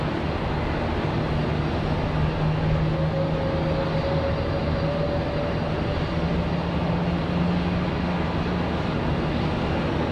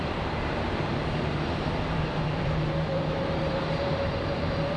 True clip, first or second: first